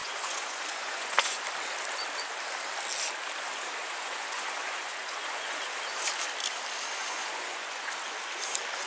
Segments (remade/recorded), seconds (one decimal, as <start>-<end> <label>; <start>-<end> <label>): 0.0-1.4 remade; 1.4-3.8 recorded; 3.8-5.6 remade; 5.6-7.0 recorded; 7.0-7.9 remade; 7.9-8.9 recorded